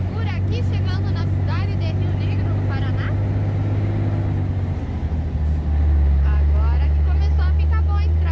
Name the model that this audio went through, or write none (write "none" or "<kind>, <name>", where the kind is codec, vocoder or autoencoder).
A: none